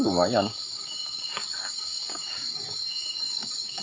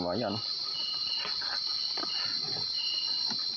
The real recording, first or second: second